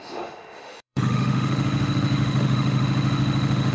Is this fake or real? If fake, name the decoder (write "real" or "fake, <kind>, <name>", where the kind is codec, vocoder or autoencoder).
fake, autoencoder, DAC-VAE